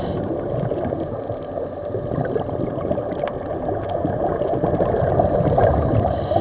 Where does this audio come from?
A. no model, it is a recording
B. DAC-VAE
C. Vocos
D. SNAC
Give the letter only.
A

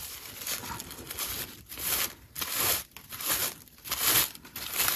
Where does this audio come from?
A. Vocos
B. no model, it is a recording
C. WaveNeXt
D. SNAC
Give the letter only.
B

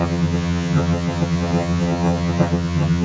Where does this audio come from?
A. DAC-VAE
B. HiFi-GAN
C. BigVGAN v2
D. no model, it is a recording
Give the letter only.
B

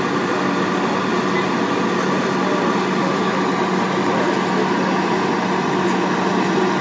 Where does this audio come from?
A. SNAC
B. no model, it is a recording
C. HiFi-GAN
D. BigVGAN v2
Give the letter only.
B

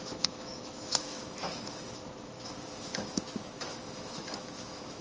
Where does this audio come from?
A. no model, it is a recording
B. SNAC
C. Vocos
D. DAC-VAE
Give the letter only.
D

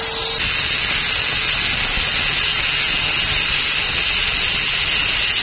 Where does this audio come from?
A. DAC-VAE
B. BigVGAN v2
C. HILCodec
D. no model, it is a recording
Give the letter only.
D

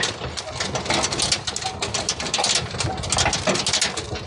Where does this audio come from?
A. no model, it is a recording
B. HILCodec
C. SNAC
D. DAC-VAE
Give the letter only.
A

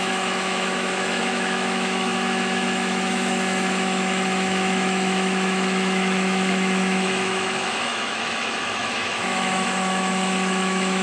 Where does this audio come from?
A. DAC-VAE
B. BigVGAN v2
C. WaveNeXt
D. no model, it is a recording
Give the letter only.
A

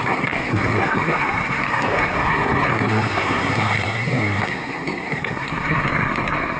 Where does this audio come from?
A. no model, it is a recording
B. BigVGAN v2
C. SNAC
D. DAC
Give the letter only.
C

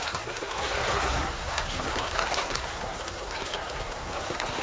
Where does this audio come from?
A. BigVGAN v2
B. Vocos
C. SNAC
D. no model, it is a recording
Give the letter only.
C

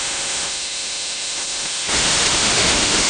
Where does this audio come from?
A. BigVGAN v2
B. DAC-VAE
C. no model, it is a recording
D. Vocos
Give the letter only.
B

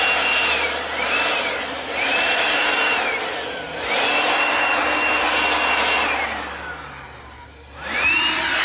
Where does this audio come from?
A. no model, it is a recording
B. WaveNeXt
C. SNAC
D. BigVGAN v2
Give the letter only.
A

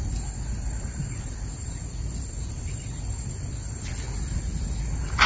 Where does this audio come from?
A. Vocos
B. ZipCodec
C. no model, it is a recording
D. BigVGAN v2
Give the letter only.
C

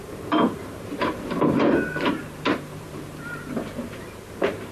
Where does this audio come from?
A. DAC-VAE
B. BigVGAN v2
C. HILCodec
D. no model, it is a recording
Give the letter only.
B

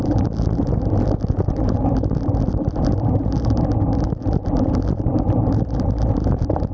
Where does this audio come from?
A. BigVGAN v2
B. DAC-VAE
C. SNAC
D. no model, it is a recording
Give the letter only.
A